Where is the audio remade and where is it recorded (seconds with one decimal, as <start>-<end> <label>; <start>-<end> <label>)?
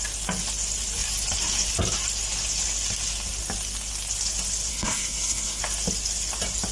0.0-4.7 recorded; 4.7-5.6 remade; 5.6-6.7 recorded